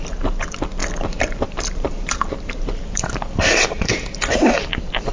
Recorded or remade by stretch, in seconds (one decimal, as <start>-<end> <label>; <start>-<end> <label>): 0.0-0.8 recorded; 0.8-3.9 remade; 3.9-5.1 recorded